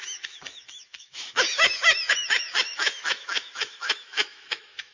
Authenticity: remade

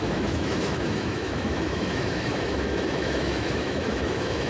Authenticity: remade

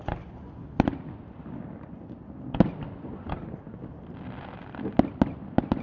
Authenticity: recorded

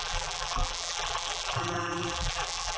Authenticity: remade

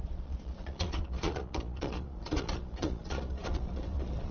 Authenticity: remade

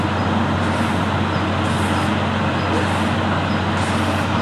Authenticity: recorded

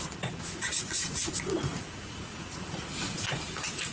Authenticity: remade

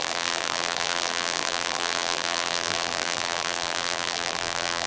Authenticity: remade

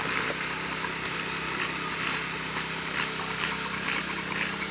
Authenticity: recorded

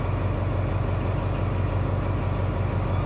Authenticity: recorded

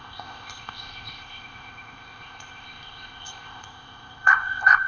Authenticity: remade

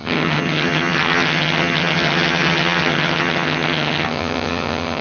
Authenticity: remade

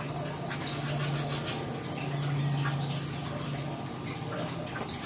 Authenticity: recorded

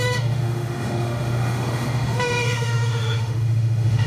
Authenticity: remade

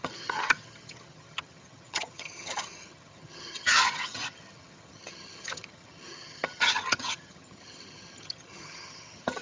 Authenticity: remade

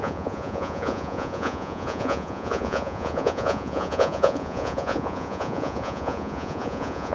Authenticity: remade